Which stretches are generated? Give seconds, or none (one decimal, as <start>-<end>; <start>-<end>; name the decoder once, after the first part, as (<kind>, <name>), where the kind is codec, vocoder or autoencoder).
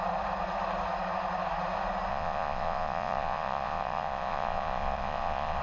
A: 2.1-5.6 (vocoder, Vocos)